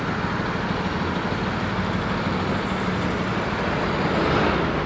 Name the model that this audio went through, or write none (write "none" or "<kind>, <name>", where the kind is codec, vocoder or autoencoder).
none